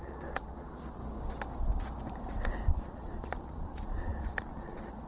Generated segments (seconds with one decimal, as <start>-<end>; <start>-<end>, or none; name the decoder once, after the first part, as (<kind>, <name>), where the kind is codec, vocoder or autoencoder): 0.0-1.0 (vocoder, Vocos); 2.7-5.1